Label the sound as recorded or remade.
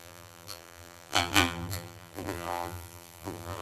remade